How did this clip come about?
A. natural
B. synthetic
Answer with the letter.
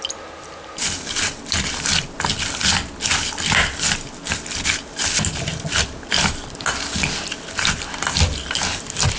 A